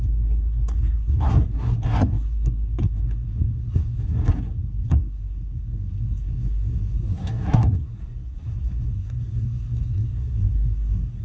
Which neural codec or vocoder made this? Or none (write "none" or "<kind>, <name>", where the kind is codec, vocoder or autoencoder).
codec, SNAC